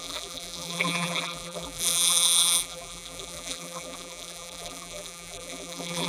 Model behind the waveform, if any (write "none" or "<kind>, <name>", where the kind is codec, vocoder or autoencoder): vocoder, BigVGAN v2